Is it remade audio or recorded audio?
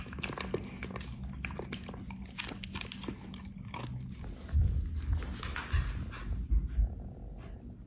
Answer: recorded